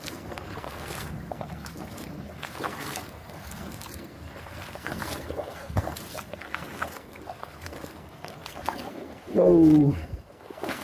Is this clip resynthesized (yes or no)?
yes